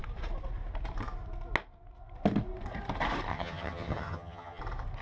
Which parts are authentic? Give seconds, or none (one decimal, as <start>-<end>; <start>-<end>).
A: 0.0-3.3; 4.6-5.0